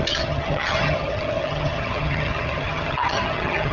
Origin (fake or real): fake